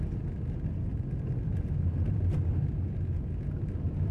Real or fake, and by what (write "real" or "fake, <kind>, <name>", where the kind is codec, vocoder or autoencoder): real